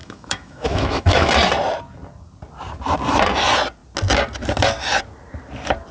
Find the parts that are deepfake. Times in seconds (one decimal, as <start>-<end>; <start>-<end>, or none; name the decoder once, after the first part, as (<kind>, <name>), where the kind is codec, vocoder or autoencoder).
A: 0.0-1.3 (autoencoder, DAC-VAE)